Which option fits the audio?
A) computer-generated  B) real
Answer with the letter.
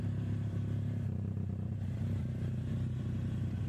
A